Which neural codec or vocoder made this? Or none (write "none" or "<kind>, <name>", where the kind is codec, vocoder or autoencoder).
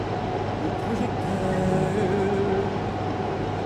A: none